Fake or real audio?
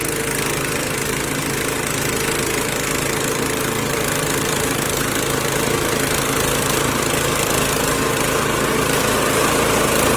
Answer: real